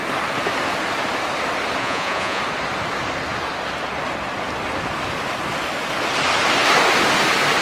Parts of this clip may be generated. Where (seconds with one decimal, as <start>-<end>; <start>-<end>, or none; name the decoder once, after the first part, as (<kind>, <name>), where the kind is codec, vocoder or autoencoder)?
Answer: 1.8-2.4 (vocoder, Vocos)